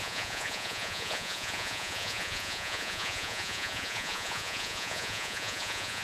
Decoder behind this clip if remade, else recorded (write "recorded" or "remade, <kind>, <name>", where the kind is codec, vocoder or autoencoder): remade, vocoder, Vocos